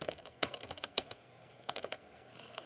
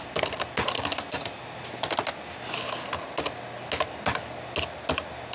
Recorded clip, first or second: second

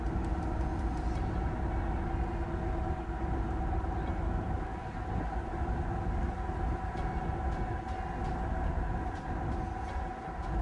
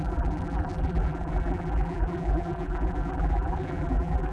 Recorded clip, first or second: first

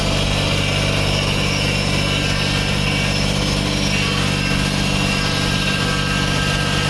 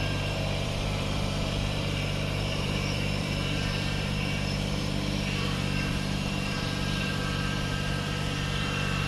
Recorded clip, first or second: first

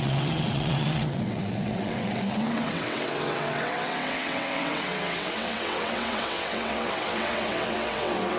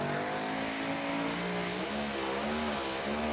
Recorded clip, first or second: second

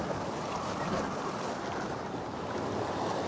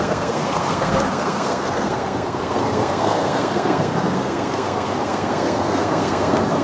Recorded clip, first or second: first